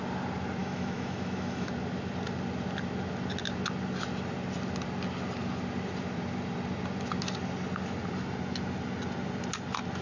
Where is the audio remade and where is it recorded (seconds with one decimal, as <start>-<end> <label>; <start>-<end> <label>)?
0.0-0.6 recorded; 0.6-1.7 remade; 1.7-10.0 recorded